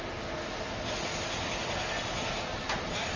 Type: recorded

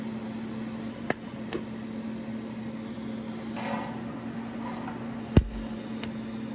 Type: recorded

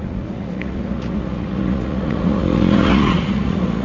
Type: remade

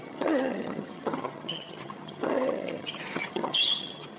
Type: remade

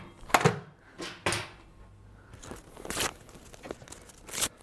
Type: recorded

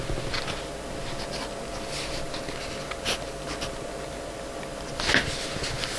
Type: recorded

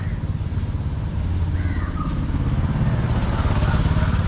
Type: recorded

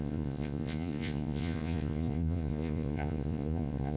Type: remade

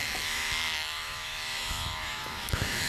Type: remade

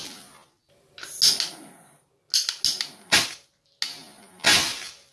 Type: recorded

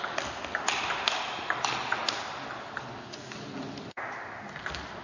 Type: recorded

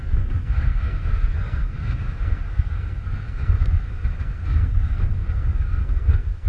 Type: remade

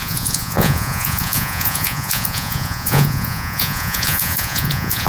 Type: remade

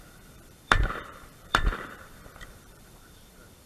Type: remade